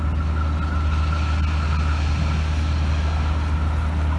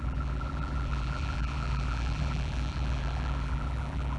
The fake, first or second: second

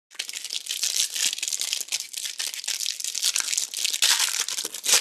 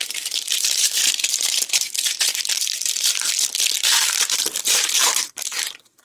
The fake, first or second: second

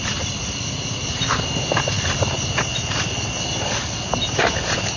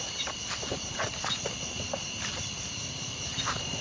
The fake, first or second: second